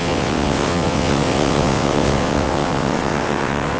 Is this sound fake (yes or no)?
yes